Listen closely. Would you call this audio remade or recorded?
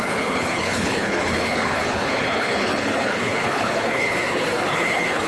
remade